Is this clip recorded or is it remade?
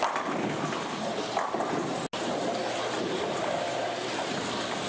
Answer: recorded